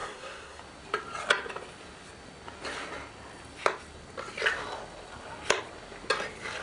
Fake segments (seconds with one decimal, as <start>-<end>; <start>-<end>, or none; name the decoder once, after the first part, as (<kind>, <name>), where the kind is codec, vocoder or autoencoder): 0.0-0.6 (codec, SNAC)